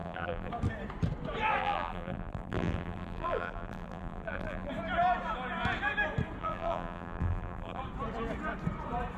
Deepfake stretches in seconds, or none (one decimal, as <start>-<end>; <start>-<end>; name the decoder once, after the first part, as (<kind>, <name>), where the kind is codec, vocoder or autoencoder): 0.0-0.5 (vocoder, BigVGAN v2); 1.6-4.7; 6.4-7.8